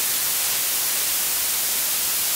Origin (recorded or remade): recorded